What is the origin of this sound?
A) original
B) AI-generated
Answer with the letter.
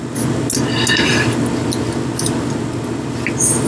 A